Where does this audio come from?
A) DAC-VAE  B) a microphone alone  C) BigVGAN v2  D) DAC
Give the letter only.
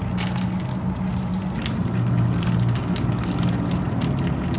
B